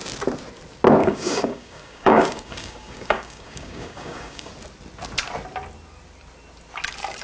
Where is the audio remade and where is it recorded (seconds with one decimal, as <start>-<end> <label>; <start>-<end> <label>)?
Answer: 0.0-1.0 recorded; 1.0-4.5 remade; 4.5-7.2 recorded